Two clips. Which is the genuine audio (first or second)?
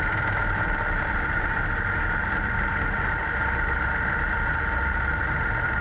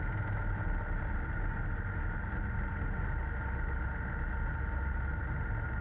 second